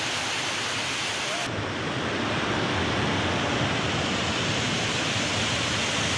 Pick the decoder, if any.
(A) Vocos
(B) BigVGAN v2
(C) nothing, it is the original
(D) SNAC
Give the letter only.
C